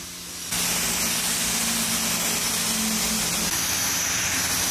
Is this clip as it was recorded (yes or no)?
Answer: yes